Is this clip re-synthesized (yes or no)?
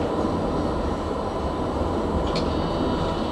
no